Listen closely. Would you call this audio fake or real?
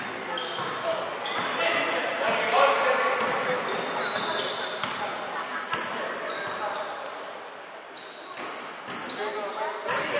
real